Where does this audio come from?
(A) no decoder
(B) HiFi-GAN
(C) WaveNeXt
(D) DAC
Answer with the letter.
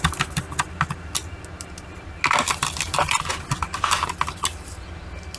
A